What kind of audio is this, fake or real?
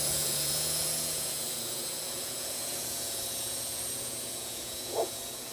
fake